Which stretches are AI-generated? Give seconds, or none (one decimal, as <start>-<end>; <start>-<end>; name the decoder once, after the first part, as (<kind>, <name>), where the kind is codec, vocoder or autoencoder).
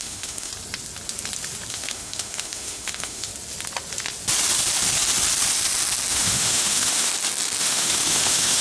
0.0-0.5 (autoencoder, DAC-VAE); 1.7-3.3; 6.1-7.1; 7.6-8.6